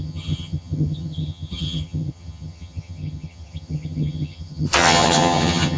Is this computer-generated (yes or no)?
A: yes